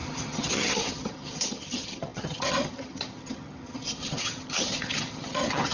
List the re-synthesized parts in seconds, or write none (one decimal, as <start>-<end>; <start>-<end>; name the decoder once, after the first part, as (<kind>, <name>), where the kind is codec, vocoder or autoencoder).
0.0-5.7 (vocoder, HiFi-GAN)